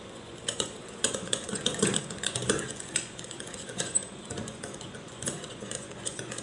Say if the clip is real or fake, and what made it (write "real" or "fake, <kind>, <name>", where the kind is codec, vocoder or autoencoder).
fake, vocoder, Vocos